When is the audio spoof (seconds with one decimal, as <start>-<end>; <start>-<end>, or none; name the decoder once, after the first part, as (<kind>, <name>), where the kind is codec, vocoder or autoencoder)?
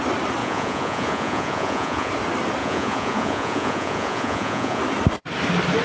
0.4-2.1 (vocoder, Vocos); 2.6-4.8